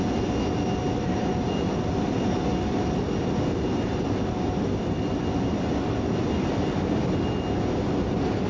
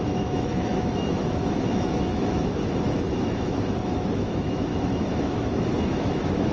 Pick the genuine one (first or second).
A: first